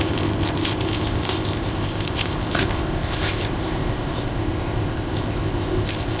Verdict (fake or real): fake